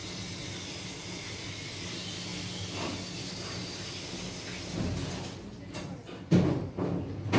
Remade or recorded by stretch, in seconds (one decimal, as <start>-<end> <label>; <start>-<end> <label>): 0.0-7.4 recorded